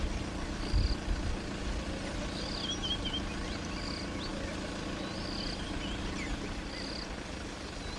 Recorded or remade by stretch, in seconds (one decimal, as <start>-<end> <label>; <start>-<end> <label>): 0.0-8.0 recorded